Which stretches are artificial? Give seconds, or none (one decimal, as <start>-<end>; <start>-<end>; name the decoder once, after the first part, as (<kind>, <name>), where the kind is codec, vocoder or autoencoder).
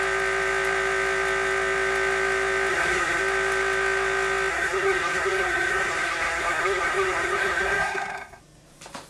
2.7-3.2 (codec, SNAC); 4.5-8.4